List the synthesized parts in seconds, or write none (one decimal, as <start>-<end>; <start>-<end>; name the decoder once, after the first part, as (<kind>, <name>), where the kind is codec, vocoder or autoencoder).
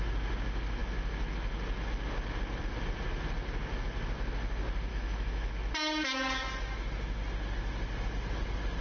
4.9-5.5 (autoencoder, DAC-VAE)